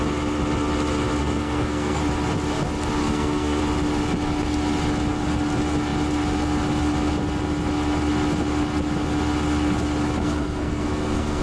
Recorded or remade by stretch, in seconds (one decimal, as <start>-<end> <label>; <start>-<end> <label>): 0.0-1.2 recorded; 1.2-2.0 remade; 2.0-3.0 recorded; 3.0-3.6 remade; 3.6-10.2 recorded; 10.2-11.4 remade